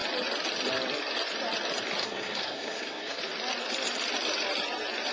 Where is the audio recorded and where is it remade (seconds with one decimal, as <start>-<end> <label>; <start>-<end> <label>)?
0.0-2.0 recorded; 2.0-3.2 remade; 3.2-5.1 recorded